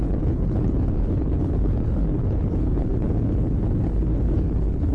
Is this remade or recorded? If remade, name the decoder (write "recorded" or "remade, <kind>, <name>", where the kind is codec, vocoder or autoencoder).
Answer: remade, codec, HILCodec